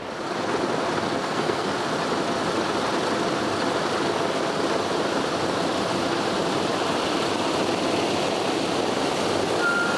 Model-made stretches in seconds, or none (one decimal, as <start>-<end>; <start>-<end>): 1.2-1.7